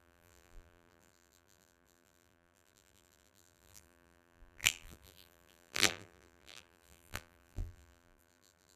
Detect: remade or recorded remade